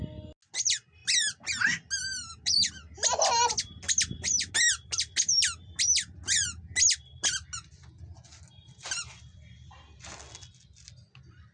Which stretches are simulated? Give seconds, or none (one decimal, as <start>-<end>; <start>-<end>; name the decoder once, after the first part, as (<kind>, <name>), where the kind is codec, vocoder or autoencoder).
none